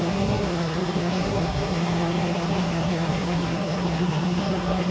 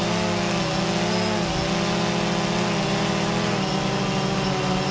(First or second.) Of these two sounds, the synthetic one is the first